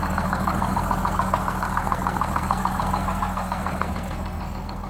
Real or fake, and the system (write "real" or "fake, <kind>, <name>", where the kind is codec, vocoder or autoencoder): fake, codec, SNAC